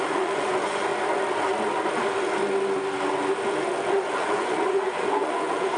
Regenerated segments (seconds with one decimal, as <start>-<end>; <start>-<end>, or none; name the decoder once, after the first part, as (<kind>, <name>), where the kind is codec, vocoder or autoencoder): 0.0-0.9 (vocoder, Vocos); 3.9-5.8